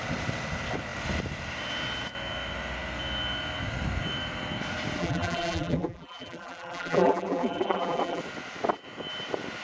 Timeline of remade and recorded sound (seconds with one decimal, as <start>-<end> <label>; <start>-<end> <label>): 0.0-5.0 recorded; 5.0-8.2 remade; 8.2-9.6 recorded